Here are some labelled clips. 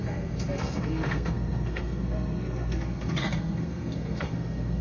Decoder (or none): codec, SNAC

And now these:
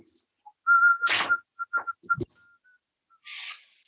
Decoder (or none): none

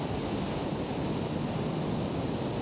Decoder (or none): none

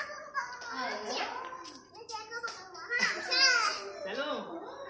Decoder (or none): none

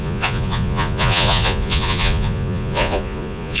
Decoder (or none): vocoder, Vocos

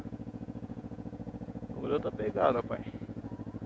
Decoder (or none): vocoder, Vocos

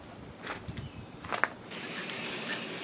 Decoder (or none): vocoder, BigVGAN v2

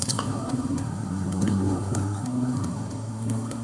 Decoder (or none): codec, SNAC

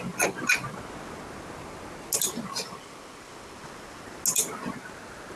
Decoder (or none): none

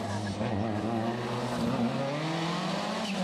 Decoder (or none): none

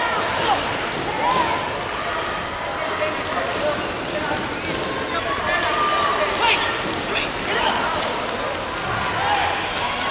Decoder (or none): none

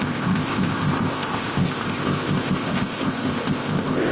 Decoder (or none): codec, ZipCodec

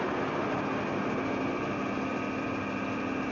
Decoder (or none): none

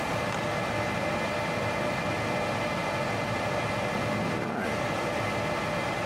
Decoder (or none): none